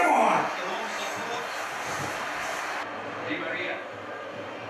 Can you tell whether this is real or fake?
real